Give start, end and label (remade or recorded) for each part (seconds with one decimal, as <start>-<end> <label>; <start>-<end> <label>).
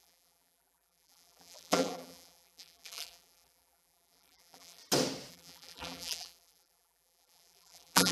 0.0-4.8 remade; 4.8-5.3 recorded; 5.3-8.1 remade